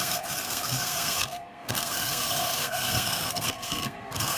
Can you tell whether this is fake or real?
fake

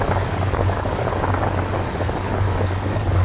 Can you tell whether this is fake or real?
fake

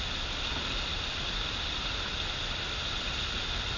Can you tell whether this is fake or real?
real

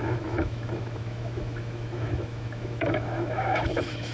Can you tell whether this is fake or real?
fake